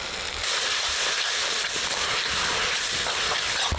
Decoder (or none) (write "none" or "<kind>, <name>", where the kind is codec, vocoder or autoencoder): none